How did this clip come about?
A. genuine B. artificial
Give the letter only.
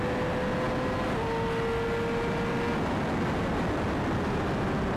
A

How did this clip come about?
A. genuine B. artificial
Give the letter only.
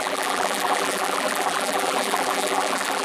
B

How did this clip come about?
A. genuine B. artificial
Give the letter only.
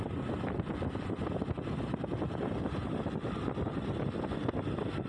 A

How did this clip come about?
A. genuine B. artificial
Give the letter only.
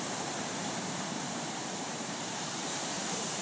B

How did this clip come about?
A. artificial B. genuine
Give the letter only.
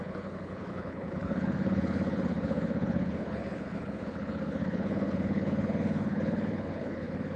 A